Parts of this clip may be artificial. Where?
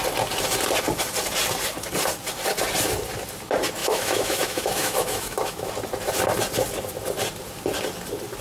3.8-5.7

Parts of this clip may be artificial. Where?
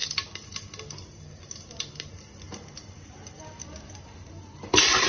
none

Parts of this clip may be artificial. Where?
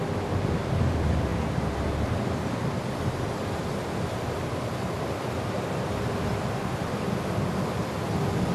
none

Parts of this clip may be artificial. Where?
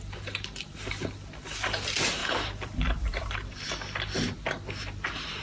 2.2-3.3